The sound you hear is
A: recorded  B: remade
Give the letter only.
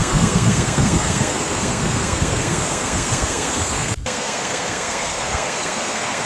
B